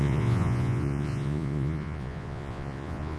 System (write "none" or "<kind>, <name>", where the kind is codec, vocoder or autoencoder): vocoder, Vocos